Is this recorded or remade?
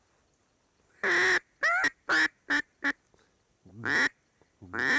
recorded